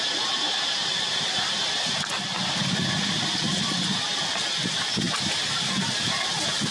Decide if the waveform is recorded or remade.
recorded